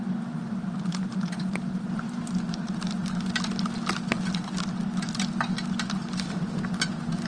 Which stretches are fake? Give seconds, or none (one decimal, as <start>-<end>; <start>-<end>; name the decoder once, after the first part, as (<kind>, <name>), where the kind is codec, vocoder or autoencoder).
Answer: 0.0-3.0 (vocoder, BigVGAN v2)